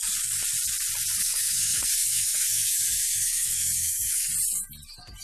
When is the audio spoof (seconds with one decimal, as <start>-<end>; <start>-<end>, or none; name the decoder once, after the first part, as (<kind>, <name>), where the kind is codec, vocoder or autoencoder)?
1.2-4.3 (codec, SNAC)